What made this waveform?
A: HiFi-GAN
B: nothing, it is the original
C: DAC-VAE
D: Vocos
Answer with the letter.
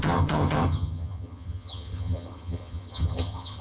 A